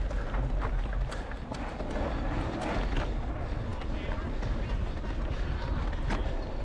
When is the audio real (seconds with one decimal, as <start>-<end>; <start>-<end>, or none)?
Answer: 0.0-6.6